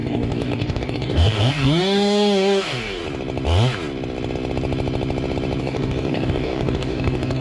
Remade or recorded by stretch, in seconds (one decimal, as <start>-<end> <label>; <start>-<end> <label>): 0.0-3.0 remade; 3.0-5.6 recorded; 5.6-7.4 remade